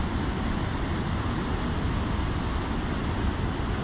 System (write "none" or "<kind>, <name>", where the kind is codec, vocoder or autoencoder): none